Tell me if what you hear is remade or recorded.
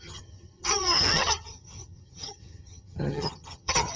remade